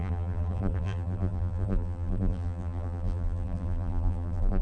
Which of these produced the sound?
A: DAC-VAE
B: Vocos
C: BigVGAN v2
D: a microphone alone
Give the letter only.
C